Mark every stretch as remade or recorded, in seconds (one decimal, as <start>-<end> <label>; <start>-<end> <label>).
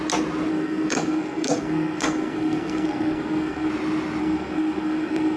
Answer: 0.0-0.5 recorded; 0.5-3.7 remade; 3.7-4.2 recorded; 4.2-5.4 remade